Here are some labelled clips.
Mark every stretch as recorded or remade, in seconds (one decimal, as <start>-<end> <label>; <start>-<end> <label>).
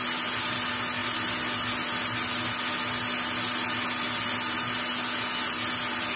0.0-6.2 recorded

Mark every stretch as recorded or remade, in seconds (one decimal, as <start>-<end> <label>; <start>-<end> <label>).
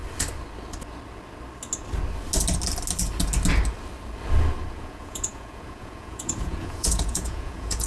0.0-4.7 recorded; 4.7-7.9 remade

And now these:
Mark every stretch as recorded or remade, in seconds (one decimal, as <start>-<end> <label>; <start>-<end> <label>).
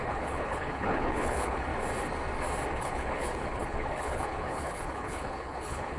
0.0-1.7 remade; 1.7-2.7 recorded; 2.7-6.0 remade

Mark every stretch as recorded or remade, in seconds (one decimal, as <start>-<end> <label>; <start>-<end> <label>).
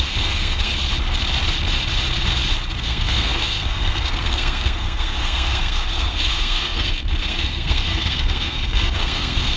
0.0-0.7 remade; 0.7-2.8 recorded; 2.8-9.6 remade